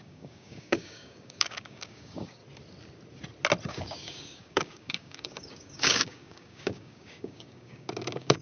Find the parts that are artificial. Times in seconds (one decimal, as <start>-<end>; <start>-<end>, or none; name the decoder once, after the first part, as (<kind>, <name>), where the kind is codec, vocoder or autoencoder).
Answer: 0.0-2.4 (codec, DAC); 3.7-8.4